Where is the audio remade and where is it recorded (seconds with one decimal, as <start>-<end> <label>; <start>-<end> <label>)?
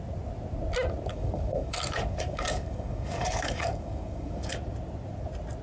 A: 0.0-1.1 recorded; 1.1-4.5 remade; 4.5-5.6 recorded